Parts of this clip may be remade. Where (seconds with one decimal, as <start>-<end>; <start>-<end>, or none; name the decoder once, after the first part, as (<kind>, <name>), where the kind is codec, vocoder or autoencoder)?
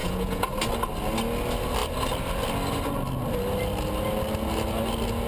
0.0-0.5 (vocoder, Vocos)